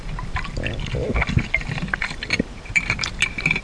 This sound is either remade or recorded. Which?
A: recorded